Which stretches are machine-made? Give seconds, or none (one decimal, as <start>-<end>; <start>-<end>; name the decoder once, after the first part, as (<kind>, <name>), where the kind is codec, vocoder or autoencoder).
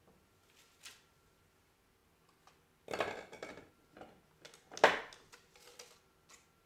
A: none